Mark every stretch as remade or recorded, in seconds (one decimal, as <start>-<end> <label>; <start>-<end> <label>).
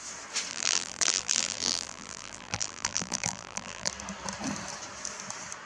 0.0-0.5 recorded; 0.5-3.9 remade; 3.9-5.7 recorded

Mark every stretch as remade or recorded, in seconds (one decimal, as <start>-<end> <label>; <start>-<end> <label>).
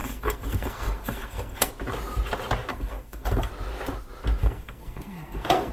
0.0-1.7 remade; 1.7-2.7 recorded; 2.7-3.5 remade; 3.5-4.4 recorded; 4.4-5.7 remade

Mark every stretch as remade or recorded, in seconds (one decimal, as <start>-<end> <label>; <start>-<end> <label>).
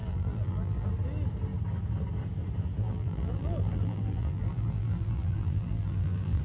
0.0-0.9 remade; 0.9-2.8 recorded; 2.8-6.4 remade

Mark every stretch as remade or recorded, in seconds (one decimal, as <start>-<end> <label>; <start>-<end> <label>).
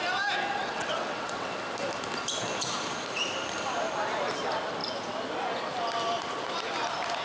0.0-0.6 recorded; 0.6-1.5 remade; 1.5-7.2 recorded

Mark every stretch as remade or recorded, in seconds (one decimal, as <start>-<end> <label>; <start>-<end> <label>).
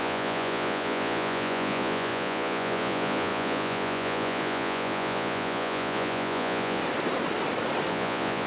0.0-6.8 remade; 6.8-7.9 recorded; 7.9-8.5 remade